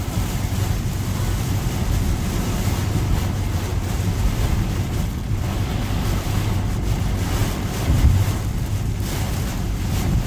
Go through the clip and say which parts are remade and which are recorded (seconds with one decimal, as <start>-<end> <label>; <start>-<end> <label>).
0.0-10.3 recorded